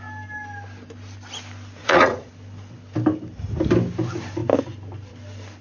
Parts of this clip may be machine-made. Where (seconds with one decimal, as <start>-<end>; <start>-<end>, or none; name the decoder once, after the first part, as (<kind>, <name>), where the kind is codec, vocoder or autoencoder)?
1.8-2.3 (vocoder, Vocos)

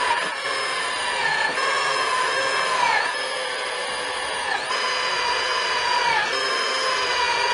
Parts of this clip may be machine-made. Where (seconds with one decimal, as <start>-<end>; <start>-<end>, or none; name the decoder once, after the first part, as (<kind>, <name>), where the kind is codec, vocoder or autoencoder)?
0.0-6.0 (vocoder, Vocos); 6.7-7.5